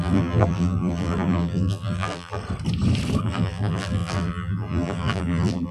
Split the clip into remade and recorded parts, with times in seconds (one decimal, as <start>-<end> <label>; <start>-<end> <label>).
0.0-2.4 remade; 2.4-3.2 recorded; 3.2-5.7 remade